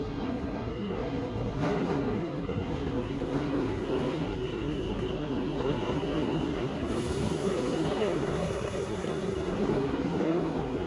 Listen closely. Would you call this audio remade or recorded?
remade